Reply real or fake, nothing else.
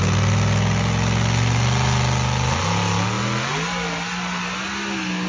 real